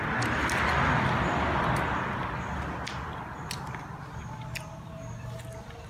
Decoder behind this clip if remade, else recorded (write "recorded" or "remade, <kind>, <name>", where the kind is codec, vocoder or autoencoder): recorded